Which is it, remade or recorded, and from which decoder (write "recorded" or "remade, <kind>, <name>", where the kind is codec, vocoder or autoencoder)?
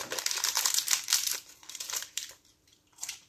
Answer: remade, vocoder, BigVGAN v2